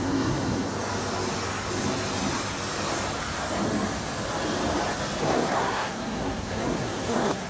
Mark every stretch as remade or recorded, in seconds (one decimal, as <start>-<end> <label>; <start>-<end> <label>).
0.0-0.7 remade; 0.7-5.2 recorded; 5.2-7.5 remade